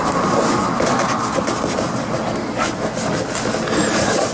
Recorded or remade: recorded